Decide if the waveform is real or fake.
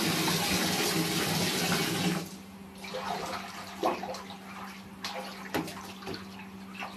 real